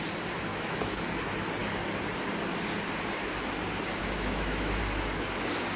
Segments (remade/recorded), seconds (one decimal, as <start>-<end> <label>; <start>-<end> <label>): 0.0-0.5 recorded; 0.5-1.0 remade; 1.0-4.0 recorded; 4.0-4.8 remade; 4.8-5.8 recorded